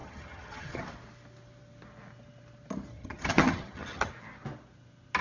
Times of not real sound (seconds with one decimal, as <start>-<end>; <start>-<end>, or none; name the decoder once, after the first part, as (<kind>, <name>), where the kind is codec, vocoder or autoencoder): 0.0-0.8 (vocoder, HiFi-GAN); 2.9-4.1